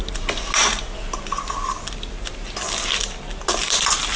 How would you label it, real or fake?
real